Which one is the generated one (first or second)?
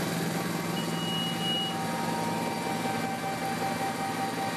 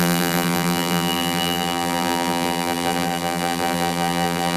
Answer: second